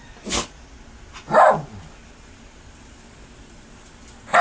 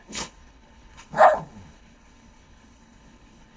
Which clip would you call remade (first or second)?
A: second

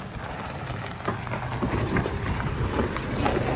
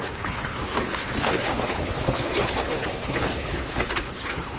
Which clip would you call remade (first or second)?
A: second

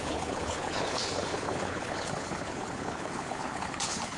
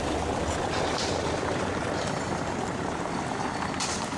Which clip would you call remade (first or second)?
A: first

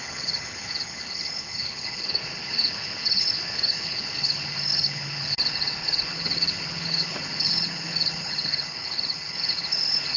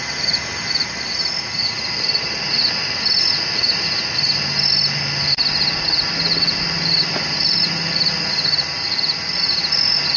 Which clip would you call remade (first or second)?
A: first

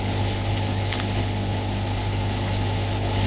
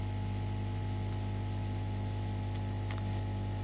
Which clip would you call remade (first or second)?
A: first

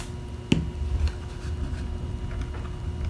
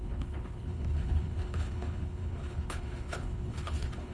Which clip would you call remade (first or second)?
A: second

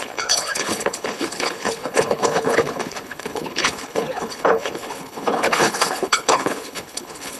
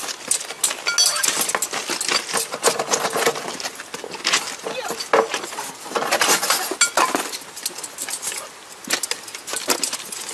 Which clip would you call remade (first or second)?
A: first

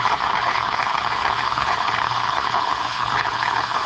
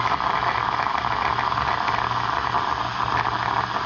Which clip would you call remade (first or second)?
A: first